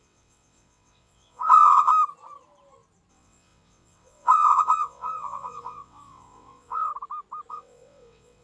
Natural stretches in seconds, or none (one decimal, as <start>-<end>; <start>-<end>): 1.9-3.1; 6.9-7.5